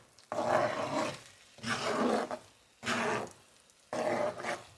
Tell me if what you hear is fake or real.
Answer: real